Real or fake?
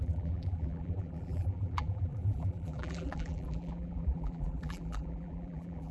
fake